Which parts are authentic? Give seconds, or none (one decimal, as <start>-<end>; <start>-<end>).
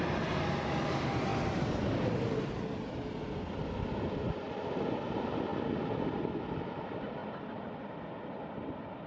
0.0-9.1